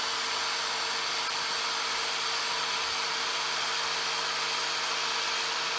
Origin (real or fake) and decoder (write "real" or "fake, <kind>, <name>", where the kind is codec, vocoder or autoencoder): real